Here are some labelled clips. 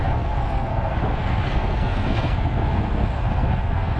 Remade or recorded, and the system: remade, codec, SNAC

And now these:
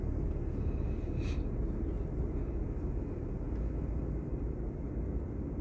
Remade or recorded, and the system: recorded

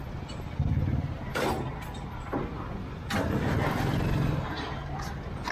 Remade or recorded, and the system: recorded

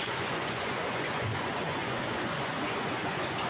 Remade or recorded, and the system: remade, vocoder, Vocos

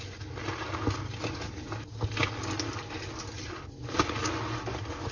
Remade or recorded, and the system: recorded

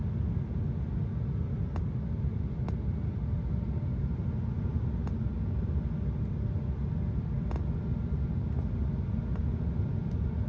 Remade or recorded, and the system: recorded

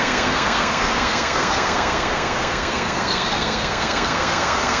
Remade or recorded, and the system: remade, codec, SNAC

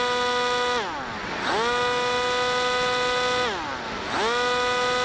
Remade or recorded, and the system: recorded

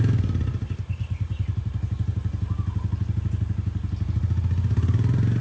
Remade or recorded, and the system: recorded